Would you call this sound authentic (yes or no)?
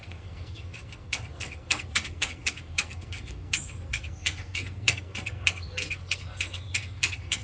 no